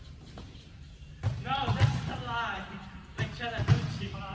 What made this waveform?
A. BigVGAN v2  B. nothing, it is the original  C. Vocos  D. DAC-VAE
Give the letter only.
A